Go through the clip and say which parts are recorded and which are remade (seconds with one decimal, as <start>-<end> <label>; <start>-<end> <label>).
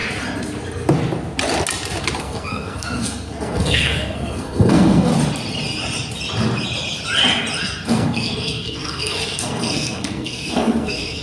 0.0-2.2 recorded; 2.2-5.1 remade; 5.1-7.6 recorded; 7.6-11.2 remade